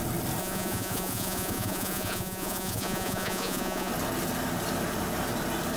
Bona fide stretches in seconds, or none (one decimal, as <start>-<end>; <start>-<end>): 0.0-0.4; 3.9-5.8

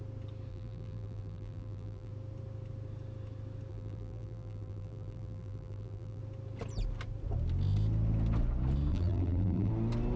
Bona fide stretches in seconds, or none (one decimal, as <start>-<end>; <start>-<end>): 0.0-0.5; 2.1-3.7; 6.2-8.9; 9.7-10.2